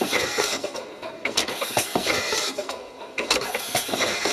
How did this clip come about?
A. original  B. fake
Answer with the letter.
B